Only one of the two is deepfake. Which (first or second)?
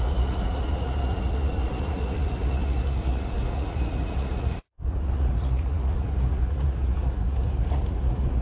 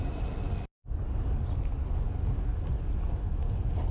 first